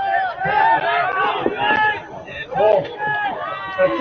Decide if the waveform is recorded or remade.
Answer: recorded